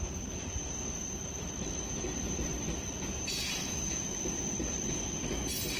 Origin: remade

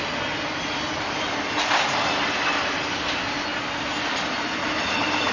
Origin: recorded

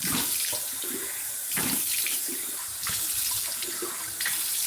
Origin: remade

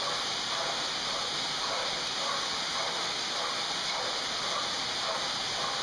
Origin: recorded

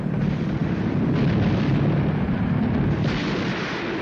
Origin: remade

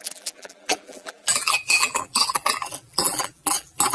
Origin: remade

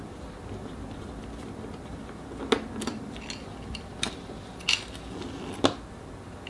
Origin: recorded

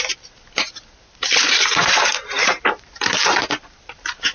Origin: remade